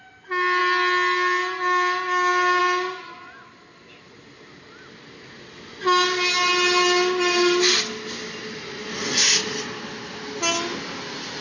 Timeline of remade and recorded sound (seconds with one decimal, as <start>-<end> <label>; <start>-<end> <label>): 0.0-11.4 recorded